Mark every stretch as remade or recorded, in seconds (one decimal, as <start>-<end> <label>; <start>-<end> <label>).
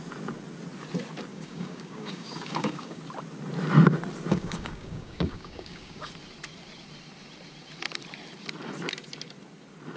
0.0-1.3 recorded; 1.3-3.0 remade; 3.0-4.3 recorded; 4.3-6.1 remade; 6.1-10.0 recorded